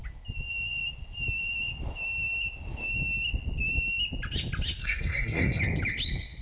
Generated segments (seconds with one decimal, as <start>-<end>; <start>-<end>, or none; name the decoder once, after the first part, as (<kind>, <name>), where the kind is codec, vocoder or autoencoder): 4.8-5.6 (codec, SNAC)